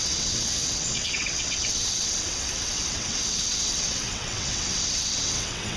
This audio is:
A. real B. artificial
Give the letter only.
B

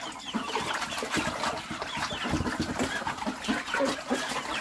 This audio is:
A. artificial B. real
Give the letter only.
B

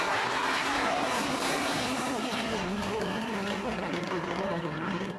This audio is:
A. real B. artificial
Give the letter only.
B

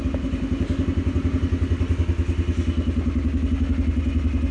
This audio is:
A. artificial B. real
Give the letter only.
B